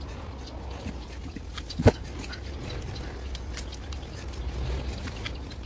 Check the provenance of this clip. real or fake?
real